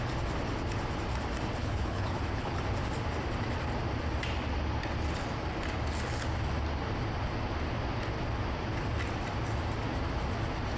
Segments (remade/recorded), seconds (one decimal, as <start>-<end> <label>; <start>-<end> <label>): 0.0-1.6 recorded; 1.6-2.6 remade; 2.6-10.8 recorded